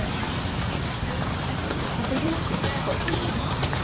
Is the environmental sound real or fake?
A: fake